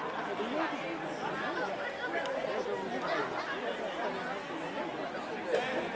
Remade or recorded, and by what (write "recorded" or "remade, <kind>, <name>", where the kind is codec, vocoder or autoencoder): recorded